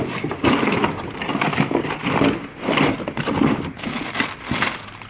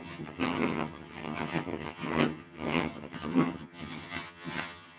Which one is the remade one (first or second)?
second